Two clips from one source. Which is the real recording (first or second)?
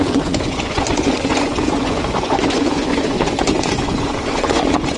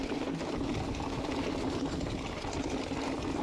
second